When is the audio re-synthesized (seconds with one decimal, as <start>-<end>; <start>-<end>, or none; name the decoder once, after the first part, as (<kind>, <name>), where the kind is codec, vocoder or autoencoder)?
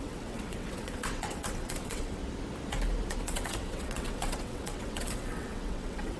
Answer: 0.0-2.2 (vocoder, WaveNeXt); 3.1-6.2